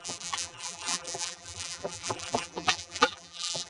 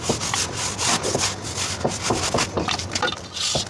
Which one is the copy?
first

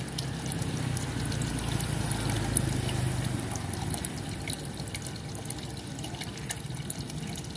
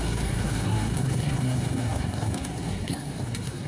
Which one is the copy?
second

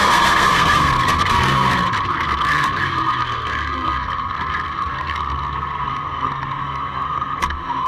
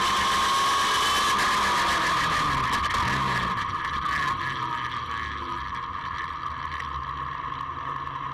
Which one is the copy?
first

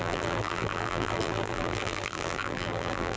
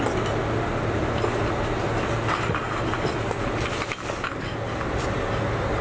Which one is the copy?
first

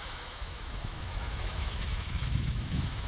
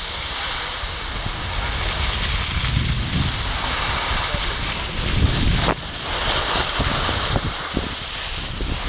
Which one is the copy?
first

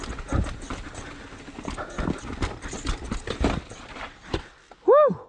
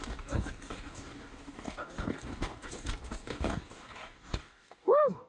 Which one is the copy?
second